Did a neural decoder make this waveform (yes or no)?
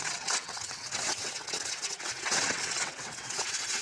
yes